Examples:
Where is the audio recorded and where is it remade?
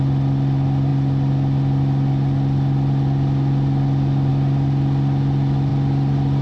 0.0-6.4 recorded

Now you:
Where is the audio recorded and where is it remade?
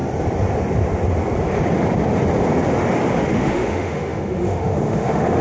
0.0-3.2 recorded; 3.2-5.4 remade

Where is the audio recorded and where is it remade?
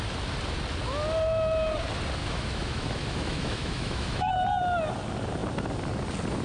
0.0-2.2 recorded; 2.2-4.3 remade; 4.3-6.4 recorded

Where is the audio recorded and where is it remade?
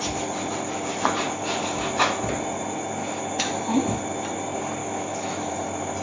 0.0-3.0 recorded; 3.0-4.0 remade; 4.0-4.8 recorded; 4.8-5.5 remade; 5.5-6.0 recorded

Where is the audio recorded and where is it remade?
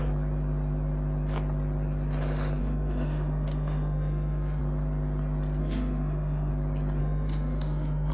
0.0-2.6 recorded; 2.6-4.6 remade; 4.6-5.6 recorded; 5.6-6.5 remade; 6.5-7.0 recorded; 7.0-8.1 remade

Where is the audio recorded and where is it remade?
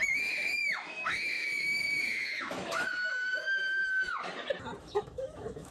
0.0-3.8 remade; 3.8-4.8 recorded; 4.8-5.7 remade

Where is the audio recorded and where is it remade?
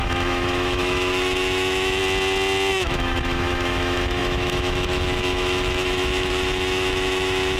0.0-2.0 remade; 2.0-2.7 recorded; 2.7-7.6 remade